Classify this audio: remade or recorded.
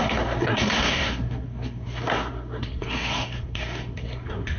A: remade